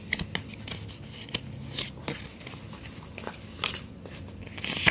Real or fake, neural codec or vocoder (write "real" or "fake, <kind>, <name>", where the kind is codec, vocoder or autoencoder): real